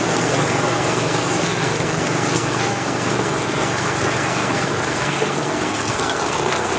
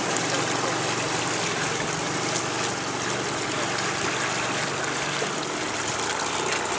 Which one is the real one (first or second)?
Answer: second